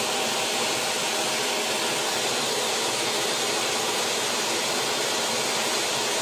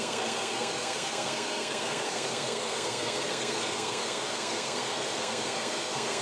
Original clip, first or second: first